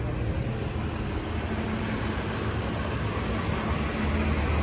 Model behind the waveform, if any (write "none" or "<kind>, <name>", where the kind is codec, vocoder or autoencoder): none